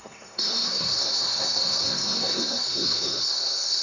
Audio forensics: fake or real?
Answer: fake